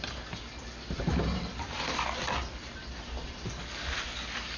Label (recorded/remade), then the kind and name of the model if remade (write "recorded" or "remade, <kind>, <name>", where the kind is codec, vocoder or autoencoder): remade, vocoder, BigVGAN v2